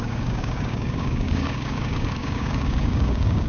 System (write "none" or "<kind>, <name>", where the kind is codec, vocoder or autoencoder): codec, DAC